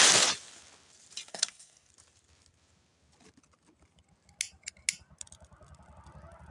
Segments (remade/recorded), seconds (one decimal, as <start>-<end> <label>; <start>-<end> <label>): 0.0-1.3 recorded; 1.3-1.9 remade; 1.9-6.5 recorded